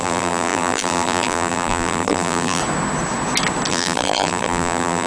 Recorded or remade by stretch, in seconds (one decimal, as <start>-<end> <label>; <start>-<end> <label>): 0.0-2.6 remade; 2.6-3.7 recorded; 3.7-5.1 remade